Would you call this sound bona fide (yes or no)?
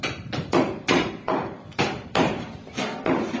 no